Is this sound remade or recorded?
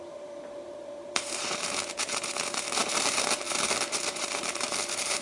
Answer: remade